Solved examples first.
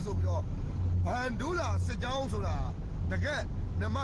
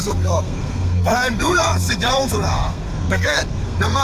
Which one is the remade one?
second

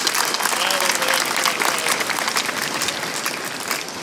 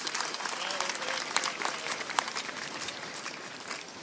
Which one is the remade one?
second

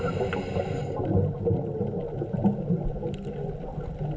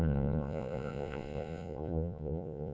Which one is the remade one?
second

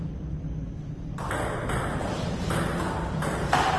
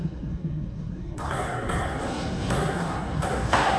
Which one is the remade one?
second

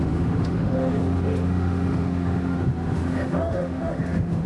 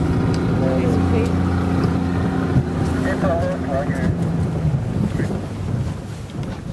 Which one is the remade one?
first